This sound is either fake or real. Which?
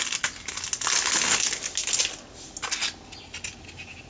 real